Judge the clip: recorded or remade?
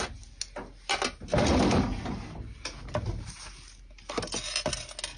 recorded